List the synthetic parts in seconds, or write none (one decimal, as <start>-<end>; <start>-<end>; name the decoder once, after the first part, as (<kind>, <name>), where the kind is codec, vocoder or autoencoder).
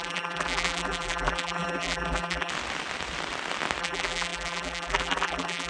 0.0-2.5 (vocoder, BigVGAN v2); 3.8-5.7